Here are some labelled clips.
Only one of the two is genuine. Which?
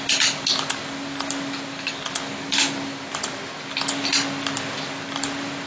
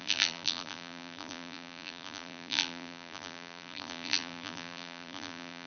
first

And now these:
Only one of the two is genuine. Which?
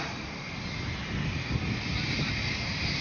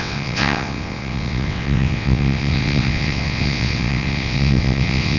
first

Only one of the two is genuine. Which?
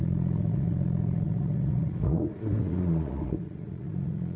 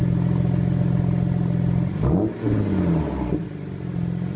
second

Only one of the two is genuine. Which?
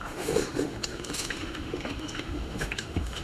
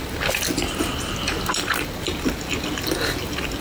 second